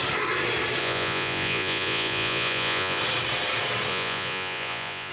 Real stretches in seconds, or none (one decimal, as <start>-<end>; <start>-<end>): 0.0-0.8; 3.0-3.9